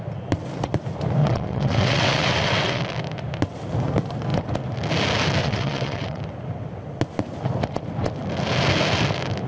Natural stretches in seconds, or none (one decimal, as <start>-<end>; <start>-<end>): 0.0-1.2; 2.8-5.4; 6.2-9.5